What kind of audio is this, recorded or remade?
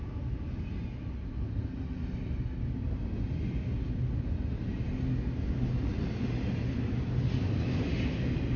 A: recorded